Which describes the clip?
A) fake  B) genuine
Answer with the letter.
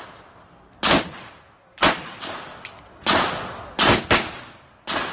B